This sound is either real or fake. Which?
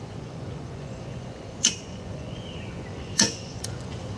fake